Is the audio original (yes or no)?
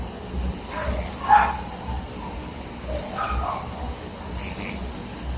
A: yes